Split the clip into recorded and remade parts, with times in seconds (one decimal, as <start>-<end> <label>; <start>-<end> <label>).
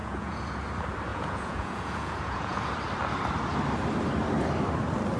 0.0-0.6 remade; 0.6-1.1 recorded; 1.1-2.7 remade; 2.7-5.2 recorded